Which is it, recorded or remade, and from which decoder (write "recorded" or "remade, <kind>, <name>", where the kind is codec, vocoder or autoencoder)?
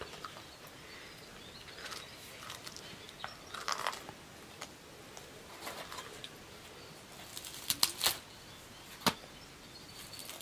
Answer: recorded